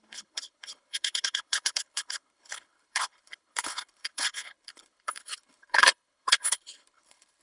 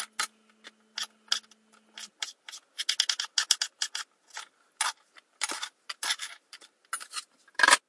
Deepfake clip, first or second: first